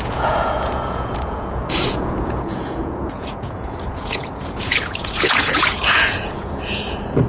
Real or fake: fake